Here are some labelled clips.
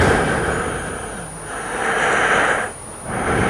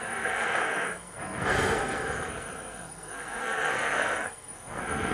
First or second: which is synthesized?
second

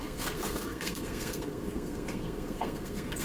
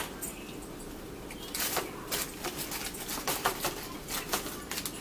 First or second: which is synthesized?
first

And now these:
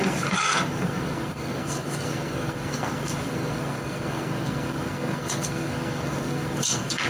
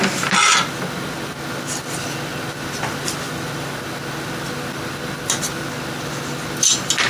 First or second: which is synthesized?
first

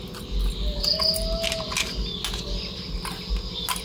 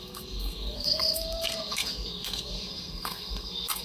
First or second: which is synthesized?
second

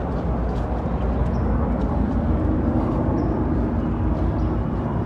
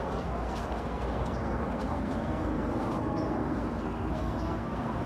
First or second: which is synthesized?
second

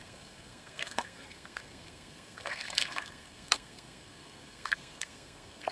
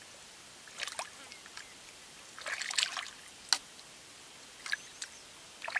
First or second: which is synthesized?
first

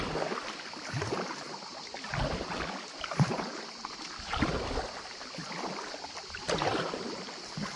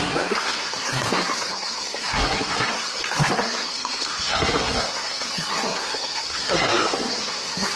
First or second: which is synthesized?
second